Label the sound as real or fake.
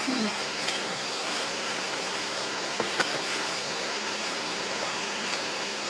fake